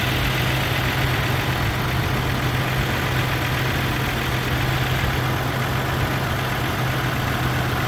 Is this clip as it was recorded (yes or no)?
yes